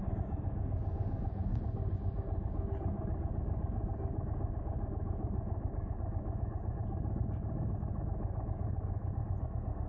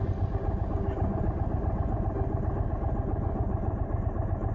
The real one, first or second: second